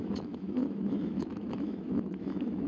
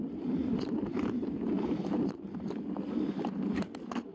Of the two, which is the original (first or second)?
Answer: second